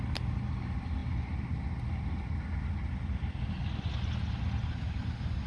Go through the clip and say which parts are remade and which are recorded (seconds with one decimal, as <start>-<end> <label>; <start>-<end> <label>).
0.0-5.5 recorded